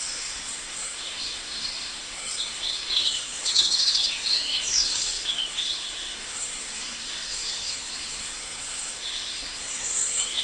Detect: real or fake fake